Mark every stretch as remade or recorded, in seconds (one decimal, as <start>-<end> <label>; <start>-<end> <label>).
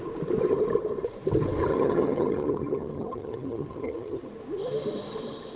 0.0-1.7 recorded; 1.7-4.2 remade; 4.2-5.6 recorded